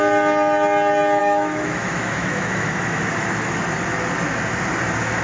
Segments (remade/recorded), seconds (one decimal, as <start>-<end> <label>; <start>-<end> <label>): 0.0-1.2 recorded; 1.2-3.8 remade; 3.8-5.2 recorded